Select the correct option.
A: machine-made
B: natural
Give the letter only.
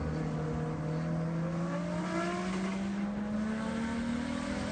B